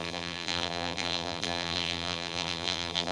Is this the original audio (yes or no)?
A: no